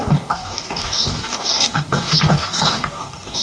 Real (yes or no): no